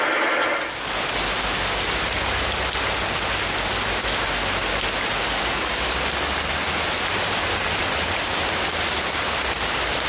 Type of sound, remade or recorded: recorded